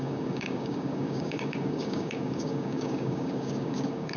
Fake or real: fake